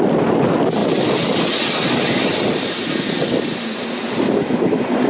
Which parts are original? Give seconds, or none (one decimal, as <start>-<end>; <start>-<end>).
0.0-5.1

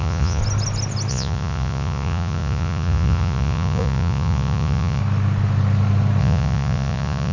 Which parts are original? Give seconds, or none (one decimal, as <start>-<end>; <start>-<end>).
0.4-1.1; 5.0-6.2

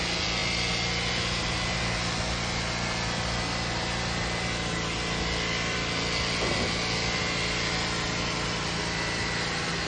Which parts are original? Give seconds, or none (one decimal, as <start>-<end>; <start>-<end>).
0.0-9.9

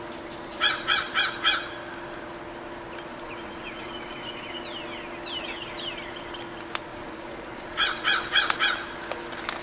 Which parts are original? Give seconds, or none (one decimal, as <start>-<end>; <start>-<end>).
0.0-0.5; 1.1-3.1; 4.5-6.9; 8.6-9.6

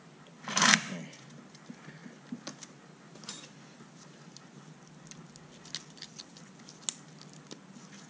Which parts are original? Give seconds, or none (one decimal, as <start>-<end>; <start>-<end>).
0.0-8.1